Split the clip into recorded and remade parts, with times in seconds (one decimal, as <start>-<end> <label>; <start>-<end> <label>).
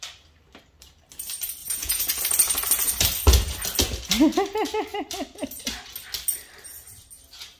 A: 0.0-1.6 recorded; 1.6-2.2 remade; 2.2-7.6 recorded